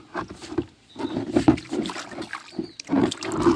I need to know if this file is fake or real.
real